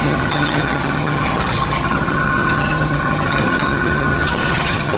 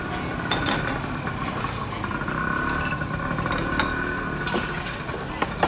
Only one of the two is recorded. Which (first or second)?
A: second